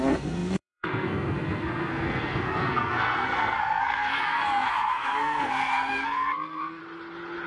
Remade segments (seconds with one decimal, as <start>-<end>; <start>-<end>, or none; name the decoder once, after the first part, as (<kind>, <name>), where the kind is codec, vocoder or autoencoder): 0.0-6.8 (codec, SNAC)